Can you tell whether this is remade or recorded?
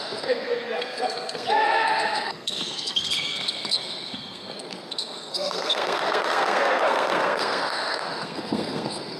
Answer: remade